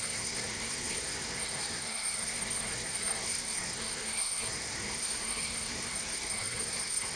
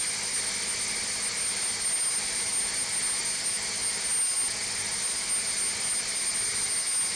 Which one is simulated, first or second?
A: first